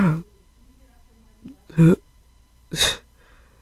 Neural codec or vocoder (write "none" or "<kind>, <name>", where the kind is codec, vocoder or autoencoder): vocoder, BigVGAN v2